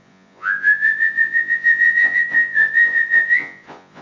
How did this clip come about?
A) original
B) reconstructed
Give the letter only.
B